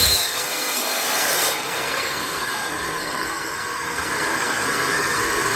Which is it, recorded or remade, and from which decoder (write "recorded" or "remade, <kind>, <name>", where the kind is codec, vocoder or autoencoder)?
remade, codec, SNAC